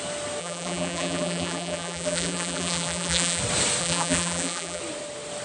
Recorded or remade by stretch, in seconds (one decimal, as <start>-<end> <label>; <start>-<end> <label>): 0.0-0.4 recorded; 0.4-3.4 remade; 3.4-3.8 recorded; 3.8-4.8 remade; 4.8-5.4 recorded